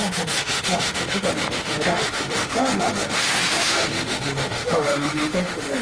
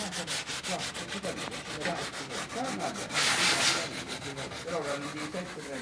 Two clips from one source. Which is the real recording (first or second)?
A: second